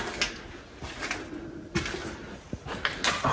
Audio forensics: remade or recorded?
recorded